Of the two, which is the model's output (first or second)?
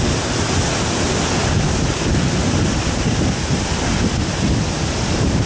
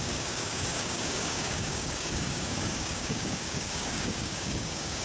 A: second